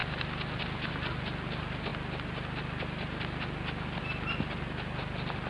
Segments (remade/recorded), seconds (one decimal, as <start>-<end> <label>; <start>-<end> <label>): 0.0-5.5 recorded